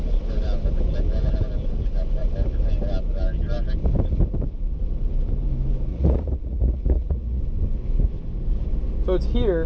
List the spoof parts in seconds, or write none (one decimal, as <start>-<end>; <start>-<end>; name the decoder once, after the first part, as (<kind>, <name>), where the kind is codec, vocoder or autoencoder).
5.9-7.4 (vocoder, Vocos)